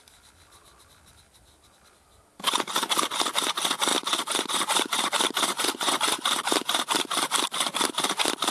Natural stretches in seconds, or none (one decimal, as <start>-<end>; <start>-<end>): 0.0-5.5; 6.2-8.5